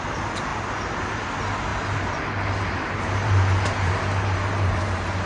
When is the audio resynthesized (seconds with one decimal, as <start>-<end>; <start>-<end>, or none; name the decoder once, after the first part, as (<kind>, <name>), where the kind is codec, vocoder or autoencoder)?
0.5-1.2 (vocoder, BigVGAN v2); 1.7-5.3